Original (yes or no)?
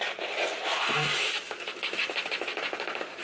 yes